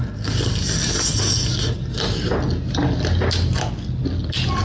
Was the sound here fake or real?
real